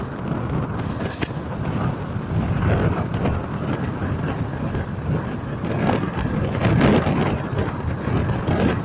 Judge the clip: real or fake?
real